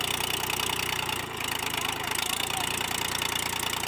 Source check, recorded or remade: recorded